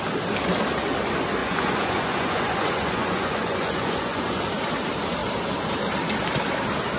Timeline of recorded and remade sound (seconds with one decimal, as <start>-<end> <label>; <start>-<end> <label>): 0.0-1.4 recorded; 1.4-4.4 remade; 4.4-7.0 recorded